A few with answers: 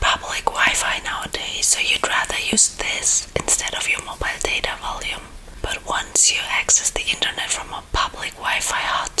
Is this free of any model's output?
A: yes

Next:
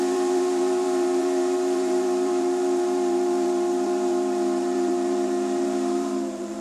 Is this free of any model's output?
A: no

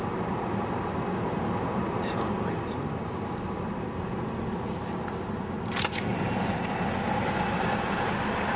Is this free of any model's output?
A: yes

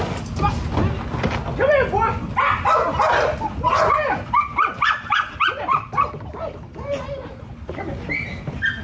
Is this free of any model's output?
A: yes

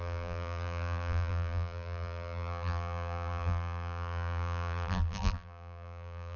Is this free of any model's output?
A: no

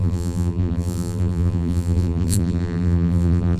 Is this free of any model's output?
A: no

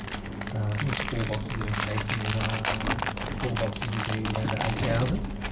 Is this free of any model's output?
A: yes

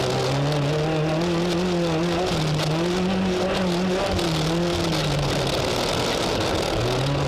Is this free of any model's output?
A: yes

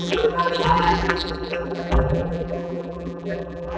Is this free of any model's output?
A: no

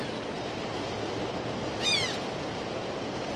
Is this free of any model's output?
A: yes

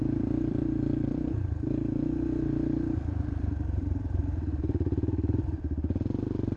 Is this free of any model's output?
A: no